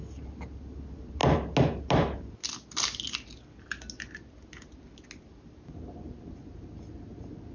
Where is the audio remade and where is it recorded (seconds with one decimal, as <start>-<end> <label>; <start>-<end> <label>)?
0.0-7.5 recorded